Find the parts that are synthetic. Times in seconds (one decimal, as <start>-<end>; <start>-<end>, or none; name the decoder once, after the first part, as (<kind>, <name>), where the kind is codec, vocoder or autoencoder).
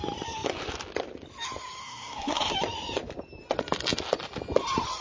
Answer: 1.8-2.5 (codec, SNAC)